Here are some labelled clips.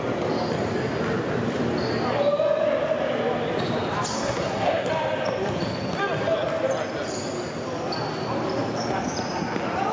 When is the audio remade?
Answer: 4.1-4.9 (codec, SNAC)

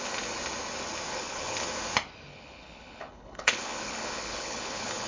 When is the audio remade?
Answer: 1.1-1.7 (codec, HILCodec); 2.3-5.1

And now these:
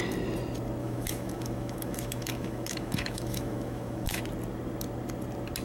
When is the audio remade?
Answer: 0.8-4.2 (autoencoder, DAC-VAE)

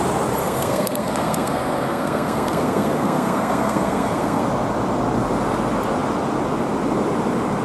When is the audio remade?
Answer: 0.4-4.4 (codec, SNAC)

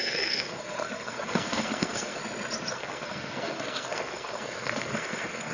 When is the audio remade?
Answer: 0.0-2.2 (codec, SNAC); 2.7-5.5